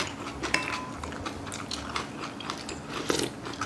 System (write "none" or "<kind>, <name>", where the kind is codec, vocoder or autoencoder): none